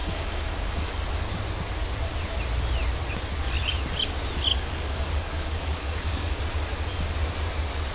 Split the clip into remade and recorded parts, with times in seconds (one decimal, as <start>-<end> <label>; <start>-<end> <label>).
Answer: 0.0-1.0 remade; 1.0-4.5 recorded; 4.5-6.4 remade; 6.4-7.9 recorded